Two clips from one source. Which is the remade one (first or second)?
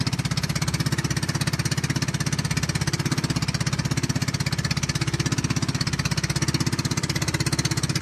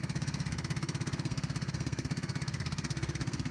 second